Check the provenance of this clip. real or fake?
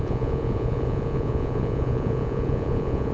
fake